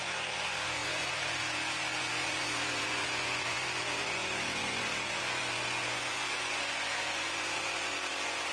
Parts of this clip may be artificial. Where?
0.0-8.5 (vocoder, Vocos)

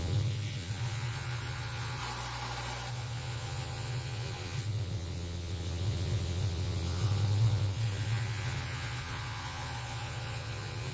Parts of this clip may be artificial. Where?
0.0-2.0 (vocoder, Vocos); 2.9-10.9

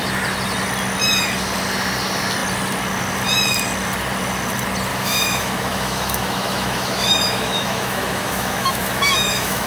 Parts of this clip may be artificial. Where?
4.9-9.7 (autoencoder, DAC-VAE)

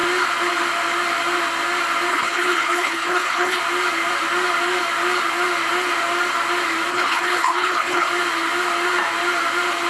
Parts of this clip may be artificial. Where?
2.1-3.6 (codec, HILCodec); 6.9-8.1

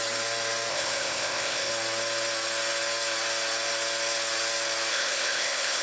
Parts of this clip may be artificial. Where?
0.7-1.7 (codec, ZipCodec); 4.9-5.8